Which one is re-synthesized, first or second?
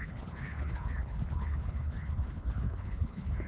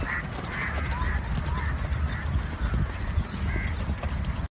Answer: first